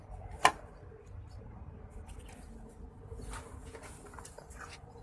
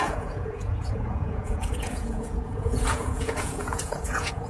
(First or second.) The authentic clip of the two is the first